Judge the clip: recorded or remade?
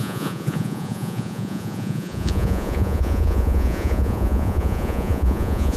remade